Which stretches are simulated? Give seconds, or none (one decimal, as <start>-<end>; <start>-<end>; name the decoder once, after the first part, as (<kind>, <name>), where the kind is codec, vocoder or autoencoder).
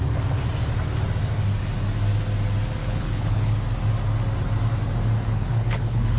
2.8-3.5 (codec, HILCodec); 5.2-6.2